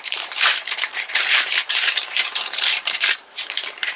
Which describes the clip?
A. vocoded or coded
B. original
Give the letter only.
A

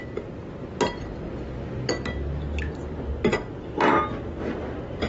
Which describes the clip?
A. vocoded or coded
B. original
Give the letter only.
B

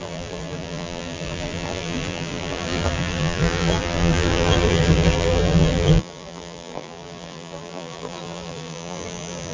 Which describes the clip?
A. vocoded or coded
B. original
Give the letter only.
A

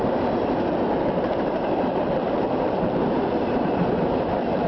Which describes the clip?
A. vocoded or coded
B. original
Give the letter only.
A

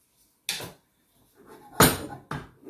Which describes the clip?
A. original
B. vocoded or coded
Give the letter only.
A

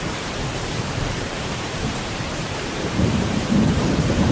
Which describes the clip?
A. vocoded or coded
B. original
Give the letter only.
A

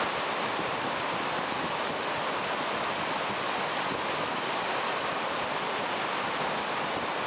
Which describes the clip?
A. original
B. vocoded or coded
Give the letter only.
A